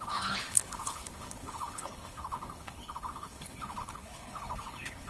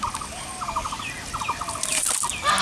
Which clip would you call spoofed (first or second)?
first